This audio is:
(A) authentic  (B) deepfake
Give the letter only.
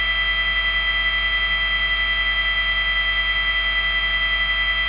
A